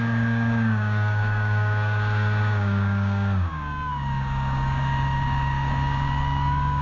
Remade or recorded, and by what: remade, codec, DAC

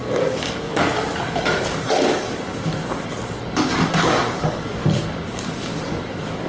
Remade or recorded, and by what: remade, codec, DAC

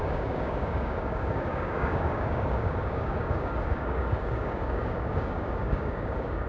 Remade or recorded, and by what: remade, codec, DAC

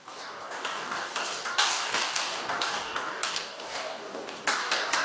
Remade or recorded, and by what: remade, codec, DAC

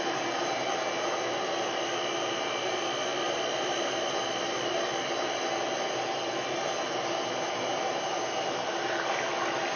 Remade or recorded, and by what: recorded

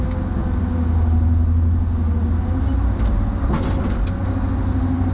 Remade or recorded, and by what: recorded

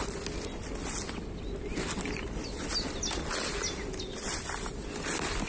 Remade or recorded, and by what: recorded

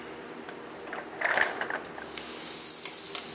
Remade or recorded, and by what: recorded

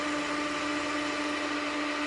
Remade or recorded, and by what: recorded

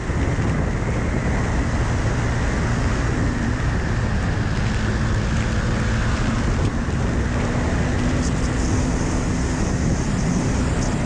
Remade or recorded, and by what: recorded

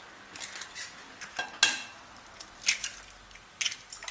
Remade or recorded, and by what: recorded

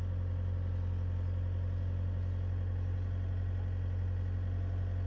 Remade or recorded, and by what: recorded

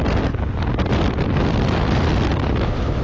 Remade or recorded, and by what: recorded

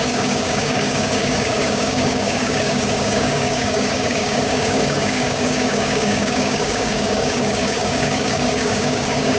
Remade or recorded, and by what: remade, codec, DAC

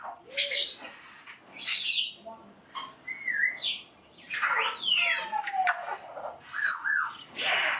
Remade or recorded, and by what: recorded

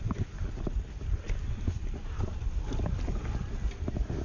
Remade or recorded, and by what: recorded